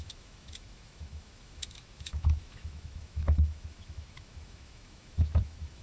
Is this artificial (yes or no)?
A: yes